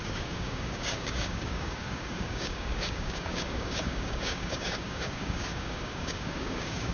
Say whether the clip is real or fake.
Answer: fake